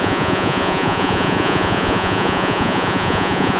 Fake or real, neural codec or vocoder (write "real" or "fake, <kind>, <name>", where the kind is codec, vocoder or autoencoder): fake, vocoder, Vocos